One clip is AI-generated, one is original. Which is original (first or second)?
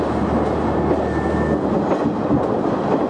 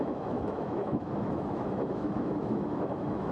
first